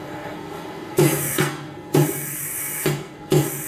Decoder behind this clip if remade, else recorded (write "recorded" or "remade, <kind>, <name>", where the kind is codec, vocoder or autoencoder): remade, codec, SNAC